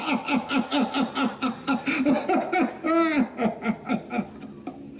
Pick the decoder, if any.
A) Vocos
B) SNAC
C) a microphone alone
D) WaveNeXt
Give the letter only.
C